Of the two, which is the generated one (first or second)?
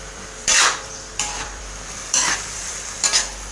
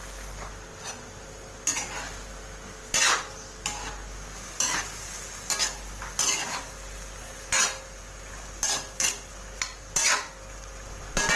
first